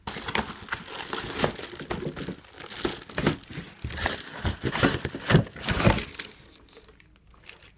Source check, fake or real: real